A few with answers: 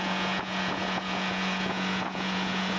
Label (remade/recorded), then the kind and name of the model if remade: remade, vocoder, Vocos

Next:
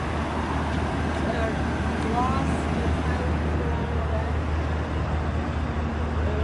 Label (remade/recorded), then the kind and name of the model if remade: recorded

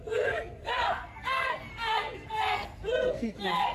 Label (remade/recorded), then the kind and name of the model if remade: remade, codec, SNAC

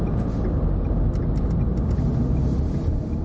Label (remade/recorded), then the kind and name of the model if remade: recorded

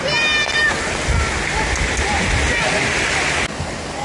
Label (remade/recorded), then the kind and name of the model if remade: recorded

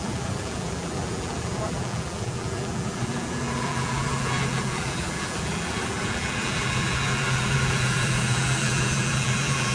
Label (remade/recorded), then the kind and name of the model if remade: remade, vocoder, BigVGAN v2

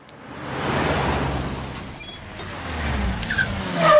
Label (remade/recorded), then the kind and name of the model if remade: recorded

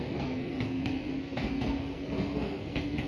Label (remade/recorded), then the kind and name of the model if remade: remade, codec, SNAC